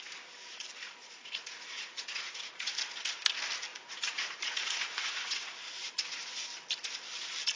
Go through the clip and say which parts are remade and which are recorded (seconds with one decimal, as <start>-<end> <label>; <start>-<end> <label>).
0.0-1.0 recorded; 1.0-2.7 remade; 2.7-3.7 recorded; 3.7-6.5 remade; 6.5-7.6 recorded